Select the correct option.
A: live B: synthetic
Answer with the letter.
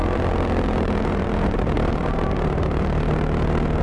B